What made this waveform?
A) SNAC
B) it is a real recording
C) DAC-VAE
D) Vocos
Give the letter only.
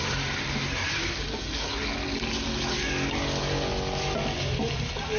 B